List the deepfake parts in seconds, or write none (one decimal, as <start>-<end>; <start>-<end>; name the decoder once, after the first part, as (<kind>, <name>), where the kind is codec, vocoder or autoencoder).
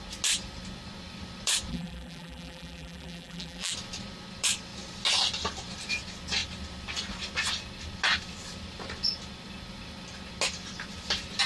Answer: 1.7-3.7 (vocoder, BigVGAN v2)